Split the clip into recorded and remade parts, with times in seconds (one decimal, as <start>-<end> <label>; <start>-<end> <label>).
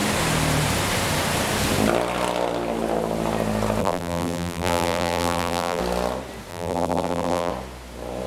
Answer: 0.0-3.8 recorded; 3.8-5.8 remade; 5.8-6.5 recorded; 6.5-7.5 remade; 7.5-8.3 recorded